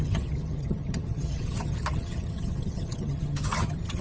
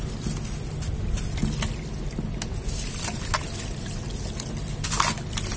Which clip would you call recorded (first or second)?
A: second